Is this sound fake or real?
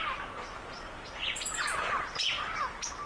real